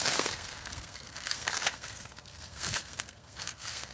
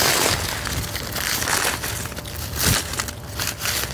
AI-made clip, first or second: first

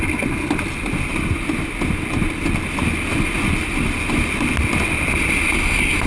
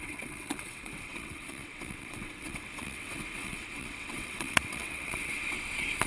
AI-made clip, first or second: second